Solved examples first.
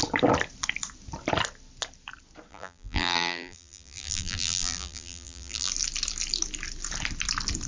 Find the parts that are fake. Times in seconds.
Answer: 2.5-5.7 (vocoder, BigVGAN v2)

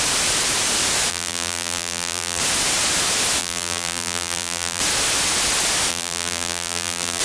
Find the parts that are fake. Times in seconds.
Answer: 1.1-2.4 (vocoder, BigVGAN v2); 3.4-4.8; 5.9-7.2

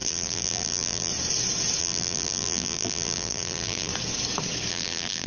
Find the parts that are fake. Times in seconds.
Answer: 0.0-1.1 (vocoder, BigVGAN v2); 1.8-3.9; 4.7-5.3

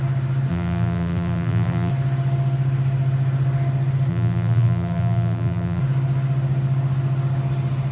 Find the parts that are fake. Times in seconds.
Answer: 0.5-1.9 (vocoder, BigVGAN v2); 4.1-5.8

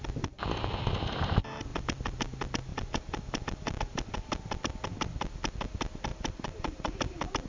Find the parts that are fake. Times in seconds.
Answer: 1.7-2.2 (vocoder, BigVGAN v2); 2.7-4.3; 6.1-6.9

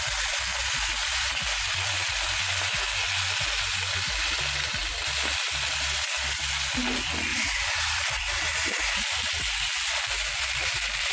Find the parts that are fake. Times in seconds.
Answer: 0.6-2.4 (vocoder, BigVGAN v2); 4.8-6.7; 7.3-9.4

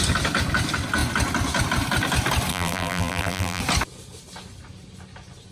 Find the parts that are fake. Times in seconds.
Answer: 2.5-3.6 (vocoder, BigVGAN v2)

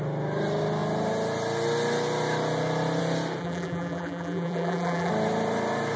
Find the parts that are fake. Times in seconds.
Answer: 3.4-5.1 (vocoder, BigVGAN v2)